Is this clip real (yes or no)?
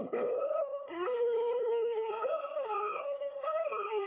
no